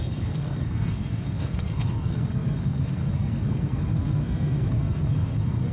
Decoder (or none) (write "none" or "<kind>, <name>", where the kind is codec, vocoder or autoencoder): codec, SNAC